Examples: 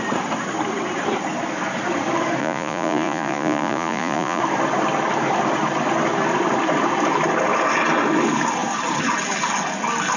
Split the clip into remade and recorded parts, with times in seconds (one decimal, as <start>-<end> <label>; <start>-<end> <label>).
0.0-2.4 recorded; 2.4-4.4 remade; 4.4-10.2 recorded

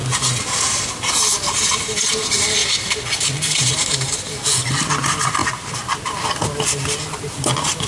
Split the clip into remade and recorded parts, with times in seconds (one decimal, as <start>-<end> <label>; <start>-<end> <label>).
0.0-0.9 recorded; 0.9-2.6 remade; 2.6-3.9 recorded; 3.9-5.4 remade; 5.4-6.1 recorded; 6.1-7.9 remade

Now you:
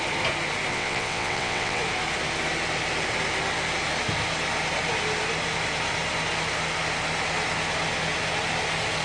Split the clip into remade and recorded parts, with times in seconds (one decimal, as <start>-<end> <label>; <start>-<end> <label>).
0.0-0.7 recorded; 0.7-1.8 remade; 1.8-9.0 recorded

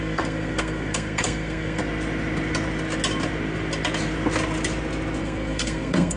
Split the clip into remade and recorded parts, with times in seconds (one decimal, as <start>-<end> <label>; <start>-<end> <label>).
0.0-1.8 remade; 1.8-5.2 recorded; 5.2-6.2 remade